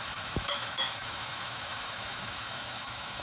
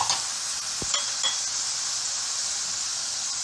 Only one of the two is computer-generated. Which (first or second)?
first